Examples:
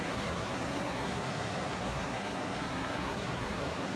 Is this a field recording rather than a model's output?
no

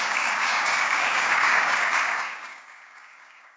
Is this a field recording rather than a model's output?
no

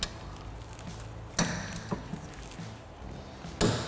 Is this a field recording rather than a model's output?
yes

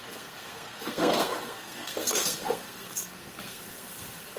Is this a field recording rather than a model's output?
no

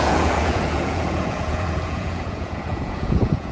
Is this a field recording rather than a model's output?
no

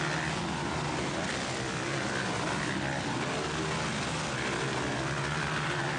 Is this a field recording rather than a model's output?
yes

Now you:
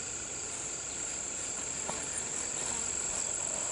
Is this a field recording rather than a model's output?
yes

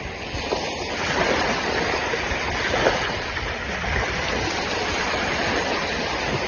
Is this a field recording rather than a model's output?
no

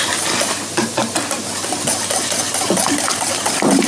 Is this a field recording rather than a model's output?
yes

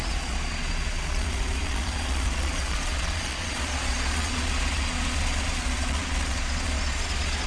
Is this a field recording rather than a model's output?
no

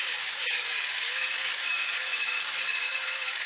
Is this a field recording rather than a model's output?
no